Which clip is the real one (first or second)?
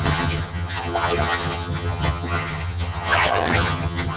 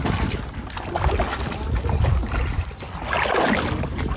second